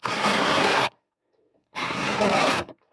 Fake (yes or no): yes